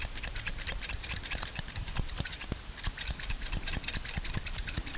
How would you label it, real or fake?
real